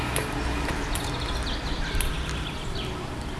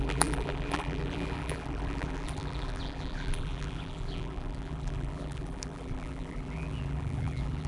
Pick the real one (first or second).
first